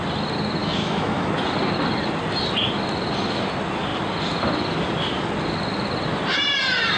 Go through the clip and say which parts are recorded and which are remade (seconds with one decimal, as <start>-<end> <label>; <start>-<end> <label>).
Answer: 0.0-0.6 recorded; 0.6-1.3 remade; 1.3-7.0 recorded